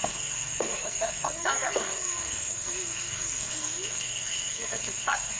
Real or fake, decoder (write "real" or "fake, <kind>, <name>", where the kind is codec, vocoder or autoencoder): fake, codec, SNAC